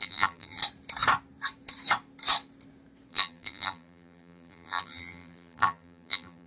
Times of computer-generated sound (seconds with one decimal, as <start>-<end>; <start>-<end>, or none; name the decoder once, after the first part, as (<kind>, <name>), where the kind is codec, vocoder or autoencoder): 0.0-0.6 (vocoder, BigVGAN v2); 3.1-6.5